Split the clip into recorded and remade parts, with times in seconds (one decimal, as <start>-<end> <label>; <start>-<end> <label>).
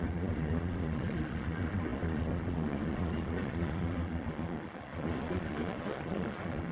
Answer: 0.0-6.7 remade